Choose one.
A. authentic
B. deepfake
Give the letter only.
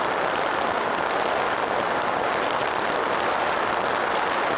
B